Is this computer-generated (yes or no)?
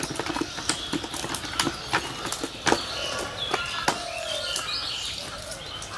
no